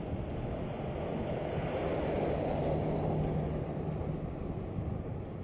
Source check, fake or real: real